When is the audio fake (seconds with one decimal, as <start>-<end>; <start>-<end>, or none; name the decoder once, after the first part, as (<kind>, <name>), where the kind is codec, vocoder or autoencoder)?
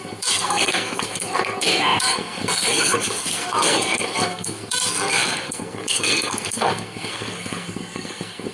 0.0-8.5 (codec, SNAC)